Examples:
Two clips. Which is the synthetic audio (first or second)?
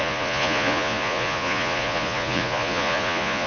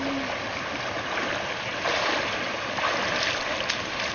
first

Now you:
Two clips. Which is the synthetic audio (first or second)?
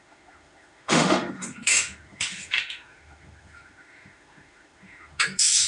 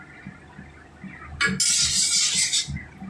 first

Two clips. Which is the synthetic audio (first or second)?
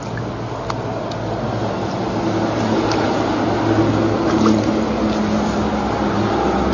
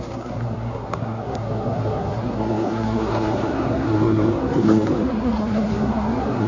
second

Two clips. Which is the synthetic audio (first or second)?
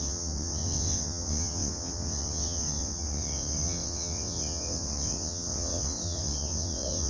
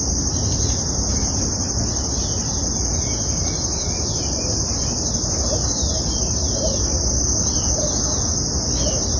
first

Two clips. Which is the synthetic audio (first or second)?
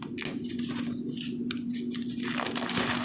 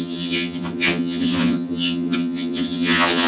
second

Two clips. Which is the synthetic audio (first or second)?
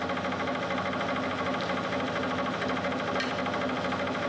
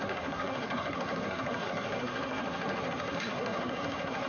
second